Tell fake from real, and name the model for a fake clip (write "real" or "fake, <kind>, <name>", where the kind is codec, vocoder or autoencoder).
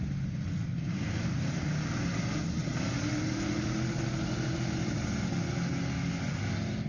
real